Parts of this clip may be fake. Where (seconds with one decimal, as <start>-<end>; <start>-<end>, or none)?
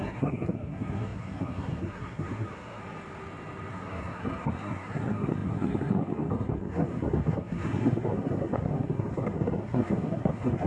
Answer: 0.0-2.8; 3.7-10.7